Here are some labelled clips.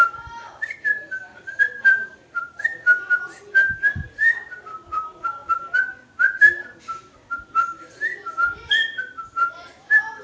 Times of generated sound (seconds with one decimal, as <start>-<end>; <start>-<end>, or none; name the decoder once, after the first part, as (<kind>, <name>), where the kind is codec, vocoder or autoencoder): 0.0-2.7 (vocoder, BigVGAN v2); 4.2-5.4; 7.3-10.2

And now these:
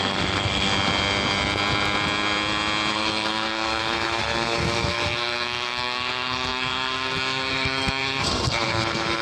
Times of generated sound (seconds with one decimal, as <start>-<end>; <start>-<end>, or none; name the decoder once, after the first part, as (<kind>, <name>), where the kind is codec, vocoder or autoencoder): 0.0-0.7 (codec, SNAC); 2.9-9.2

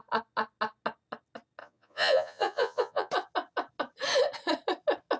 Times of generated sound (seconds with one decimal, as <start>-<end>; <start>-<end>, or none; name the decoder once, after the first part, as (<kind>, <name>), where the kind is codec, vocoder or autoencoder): 1.6-3.1 (vocoder, Vocos)

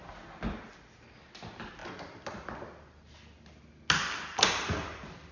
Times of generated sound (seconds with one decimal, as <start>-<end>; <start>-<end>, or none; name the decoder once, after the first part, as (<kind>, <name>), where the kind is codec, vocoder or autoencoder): none